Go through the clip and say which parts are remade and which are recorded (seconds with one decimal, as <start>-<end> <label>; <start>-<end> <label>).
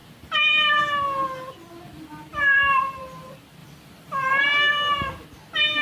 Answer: 0.0-0.8 remade; 0.8-2.3 recorded; 2.3-3.0 remade; 3.0-3.6 recorded; 3.6-4.4 remade; 4.4-5.8 recorded